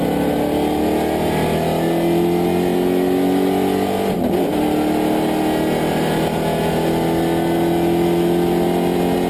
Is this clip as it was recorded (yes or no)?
yes